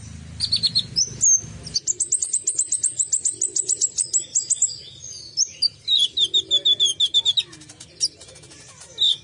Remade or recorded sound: recorded